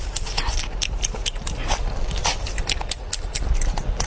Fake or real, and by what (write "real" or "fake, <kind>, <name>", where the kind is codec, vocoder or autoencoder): real